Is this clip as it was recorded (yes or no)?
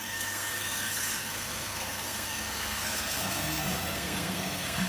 no